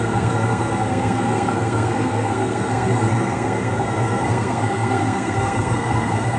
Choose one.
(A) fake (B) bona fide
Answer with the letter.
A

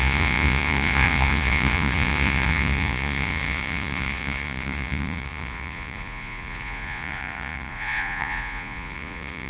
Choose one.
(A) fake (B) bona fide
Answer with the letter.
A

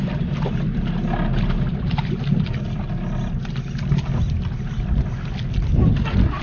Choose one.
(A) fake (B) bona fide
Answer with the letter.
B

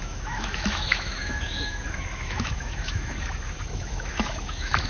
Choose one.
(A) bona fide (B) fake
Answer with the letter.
B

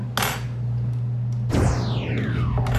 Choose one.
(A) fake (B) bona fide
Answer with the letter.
B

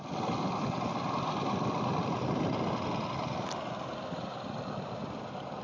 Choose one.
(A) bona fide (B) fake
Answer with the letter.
A